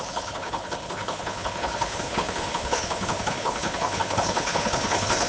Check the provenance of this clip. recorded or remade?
remade